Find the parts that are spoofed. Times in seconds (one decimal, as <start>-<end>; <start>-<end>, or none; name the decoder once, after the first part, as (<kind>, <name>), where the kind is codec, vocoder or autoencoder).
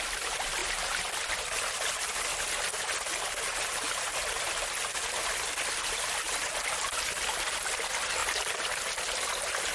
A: none